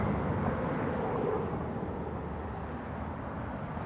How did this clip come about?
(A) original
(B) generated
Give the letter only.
A